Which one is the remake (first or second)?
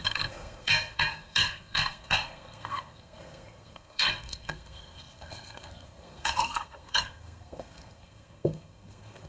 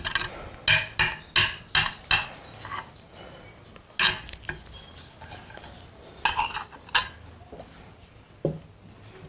first